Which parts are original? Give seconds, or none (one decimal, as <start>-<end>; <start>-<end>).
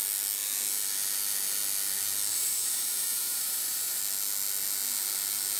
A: 0.0-2.3; 4.0-5.6